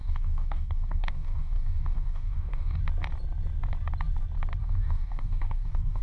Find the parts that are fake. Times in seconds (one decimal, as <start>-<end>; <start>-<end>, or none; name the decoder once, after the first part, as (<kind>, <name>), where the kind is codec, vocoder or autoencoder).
0.0-2.8 (codec, DAC); 4.6-6.0